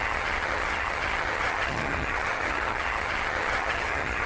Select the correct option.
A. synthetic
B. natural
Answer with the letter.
A